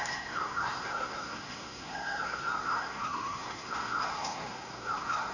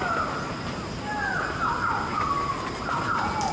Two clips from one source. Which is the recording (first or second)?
second